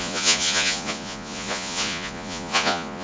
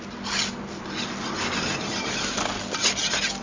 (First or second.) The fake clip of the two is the first